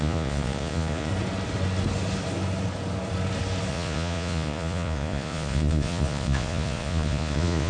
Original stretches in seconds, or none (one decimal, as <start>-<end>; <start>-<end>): 1.1-3.7